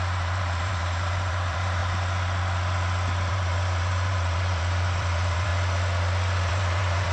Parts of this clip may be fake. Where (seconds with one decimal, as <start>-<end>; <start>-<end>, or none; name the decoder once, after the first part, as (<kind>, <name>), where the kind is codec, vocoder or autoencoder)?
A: 0.0-1.8 (vocoder, BigVGAN v2); 3.3-5.5; 6.5-7.1